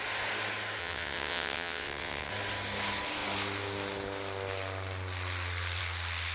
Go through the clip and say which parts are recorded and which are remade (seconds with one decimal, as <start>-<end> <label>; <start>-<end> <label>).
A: 0.0-0.8 recorded; 0.8-2.3 remade; 2.3-6.3 recorded